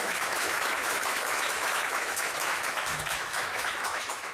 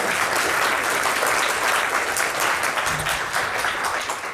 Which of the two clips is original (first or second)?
second